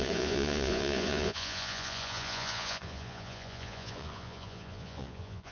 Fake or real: fake